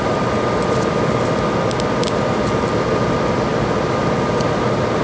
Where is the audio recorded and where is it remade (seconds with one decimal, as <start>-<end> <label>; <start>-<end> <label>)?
0.0-5.0 recorded